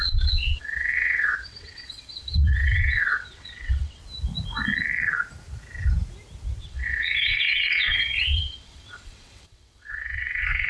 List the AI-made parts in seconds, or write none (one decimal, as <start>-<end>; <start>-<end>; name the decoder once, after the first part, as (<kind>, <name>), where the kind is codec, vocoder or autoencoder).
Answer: 0.0-4.0 (vocoder, WaveNeXt); 6.6-10.7